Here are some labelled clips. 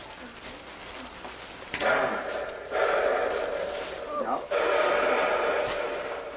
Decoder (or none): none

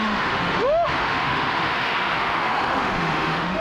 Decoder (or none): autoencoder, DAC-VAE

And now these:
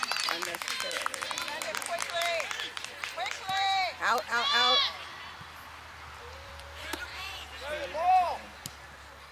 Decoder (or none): vocoder, BigVGAN v2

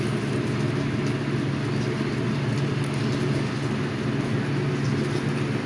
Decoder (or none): none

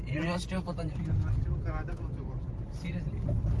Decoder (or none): vocoder, BigVGAN v2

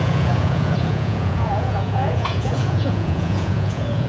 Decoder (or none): vocoder, Vocos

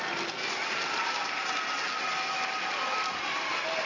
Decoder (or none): none